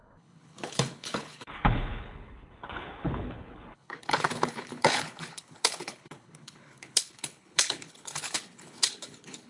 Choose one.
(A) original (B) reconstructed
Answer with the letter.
B